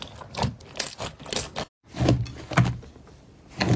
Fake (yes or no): no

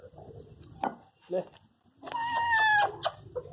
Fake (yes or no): no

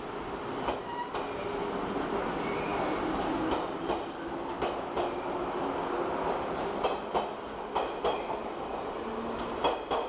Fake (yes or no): no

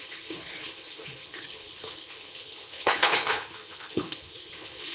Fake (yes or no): yes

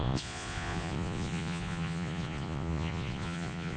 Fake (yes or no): yes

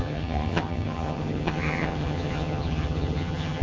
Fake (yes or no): yes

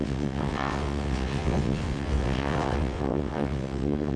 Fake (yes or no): yes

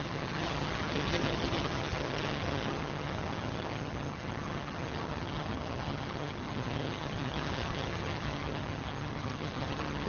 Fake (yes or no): yes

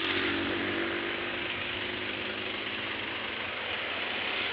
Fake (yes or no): no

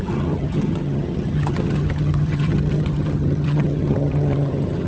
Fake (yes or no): yes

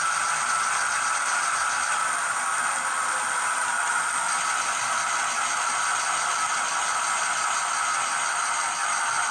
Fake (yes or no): no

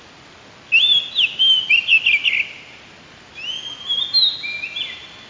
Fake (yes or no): no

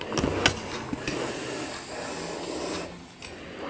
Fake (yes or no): no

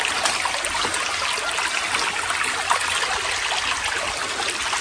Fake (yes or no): no